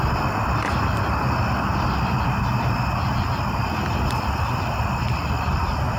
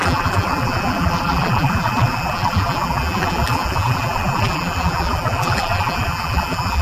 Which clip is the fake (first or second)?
second